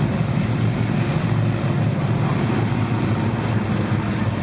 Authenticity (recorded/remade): recorded